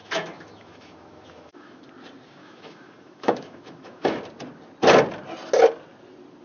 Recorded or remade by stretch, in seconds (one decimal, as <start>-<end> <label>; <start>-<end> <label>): 0.0-1.8 remade; 1.8-2.4 recorded; 2.4-4.2 remade; 4.2-6.4 recorded